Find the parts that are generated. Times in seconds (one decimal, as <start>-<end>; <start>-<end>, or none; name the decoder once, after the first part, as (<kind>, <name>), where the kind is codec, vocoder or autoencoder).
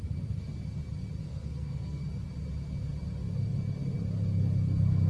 1.2-2.0 (codec, SNAC)